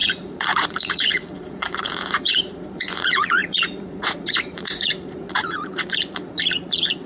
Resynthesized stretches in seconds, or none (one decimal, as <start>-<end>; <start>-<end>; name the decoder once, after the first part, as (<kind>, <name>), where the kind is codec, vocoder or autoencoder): 0.0-7.1 (vocoder, Vocos)